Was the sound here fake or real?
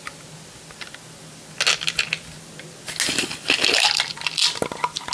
real